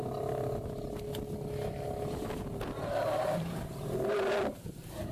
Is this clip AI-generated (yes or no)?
no